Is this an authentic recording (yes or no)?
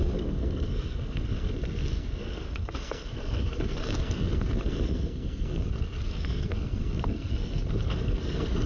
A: no